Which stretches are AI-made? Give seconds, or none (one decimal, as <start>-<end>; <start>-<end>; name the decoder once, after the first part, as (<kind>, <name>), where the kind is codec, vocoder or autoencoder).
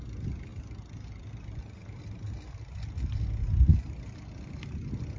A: 0.5-1.3 (vocoder, BigVGAN v2)